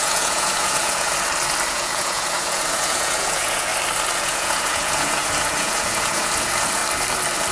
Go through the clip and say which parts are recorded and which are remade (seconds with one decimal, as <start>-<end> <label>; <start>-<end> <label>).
0.0-1.1 remade; 1.1-1.7 recorded; 1.7-3.7 remade; 3.7-4.2 recorded; 4.2-6.8 remade; 6.8-7.5 recorded